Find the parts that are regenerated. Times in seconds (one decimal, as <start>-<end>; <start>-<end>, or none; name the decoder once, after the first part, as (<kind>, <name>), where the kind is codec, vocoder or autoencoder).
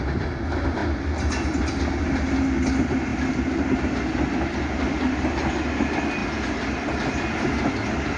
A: none